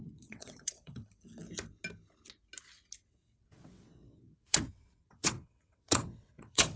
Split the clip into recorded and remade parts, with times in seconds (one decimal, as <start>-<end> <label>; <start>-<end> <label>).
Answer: 0.0-1.0 remade; 1.0-3.1 recorded; 3.1-6.8 remade